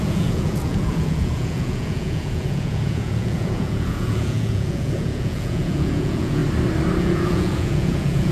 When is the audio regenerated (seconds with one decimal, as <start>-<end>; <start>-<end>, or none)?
0.0-6.4; 7.0-8.3